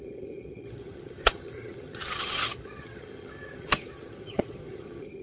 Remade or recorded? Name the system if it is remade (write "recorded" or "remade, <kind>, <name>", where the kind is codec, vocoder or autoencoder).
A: remade, vocoder, HiFi-GAN